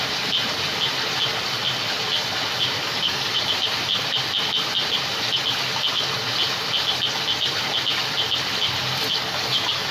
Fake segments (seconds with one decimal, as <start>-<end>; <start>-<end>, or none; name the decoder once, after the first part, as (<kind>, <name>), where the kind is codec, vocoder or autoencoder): 2.8-3.4 (codec, DAC); 9.2-9.9